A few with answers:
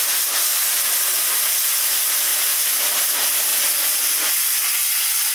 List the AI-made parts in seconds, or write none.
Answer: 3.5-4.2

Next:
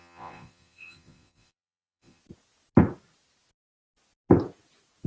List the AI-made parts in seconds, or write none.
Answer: 0.0-2.2

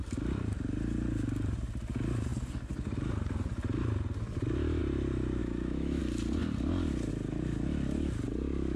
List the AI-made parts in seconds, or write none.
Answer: 5.4-6.0

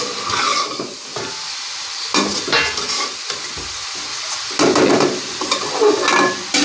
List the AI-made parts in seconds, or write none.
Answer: 0.0-0.5; 1.3-4.1; 4.9-6.6

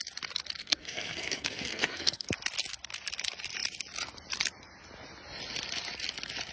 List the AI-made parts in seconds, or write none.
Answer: 0.6-2.3

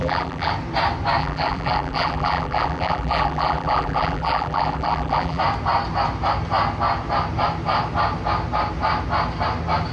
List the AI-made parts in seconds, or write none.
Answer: 0.0-0.5; 1.2-5.4